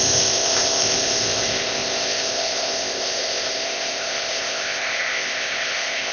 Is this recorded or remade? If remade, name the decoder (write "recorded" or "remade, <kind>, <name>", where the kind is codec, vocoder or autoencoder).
remade, codec, ZipCodec